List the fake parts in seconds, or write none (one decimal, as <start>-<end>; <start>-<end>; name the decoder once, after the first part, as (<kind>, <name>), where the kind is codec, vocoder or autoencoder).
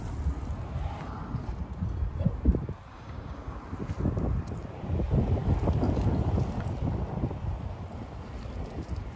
2.9-3.6 (codec, DAC)